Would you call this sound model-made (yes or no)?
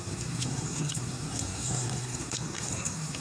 yes